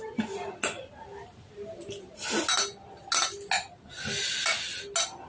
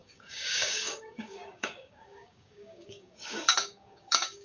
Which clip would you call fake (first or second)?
second